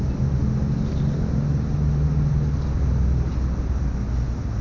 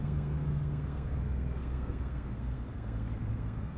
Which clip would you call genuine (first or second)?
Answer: first